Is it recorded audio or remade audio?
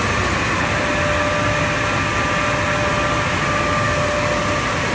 recorded